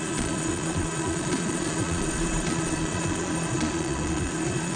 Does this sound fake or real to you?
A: fake